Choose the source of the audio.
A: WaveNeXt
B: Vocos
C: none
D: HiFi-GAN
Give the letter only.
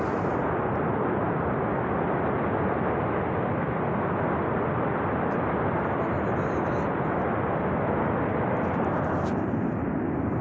C